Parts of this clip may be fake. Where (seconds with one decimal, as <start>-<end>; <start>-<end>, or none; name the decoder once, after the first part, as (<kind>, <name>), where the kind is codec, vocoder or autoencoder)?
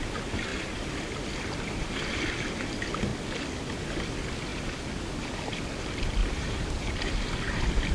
6.2-7.1 (vocoder, BigVGAN v2)